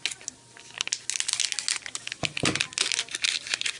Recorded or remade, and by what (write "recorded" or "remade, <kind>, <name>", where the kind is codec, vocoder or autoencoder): recorded